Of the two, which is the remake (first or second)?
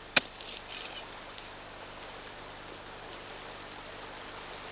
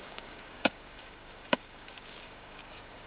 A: second